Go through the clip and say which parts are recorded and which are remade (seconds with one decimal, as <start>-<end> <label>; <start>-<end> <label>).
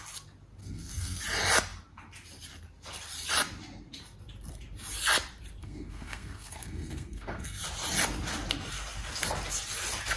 0.0-0.6 recorded; 0.6-1.2 remade; 1.2-5.6 recorded; 5.6-7.6 remade; 7.6-10.2 recorded